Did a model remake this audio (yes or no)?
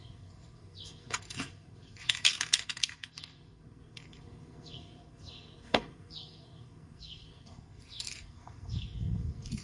yes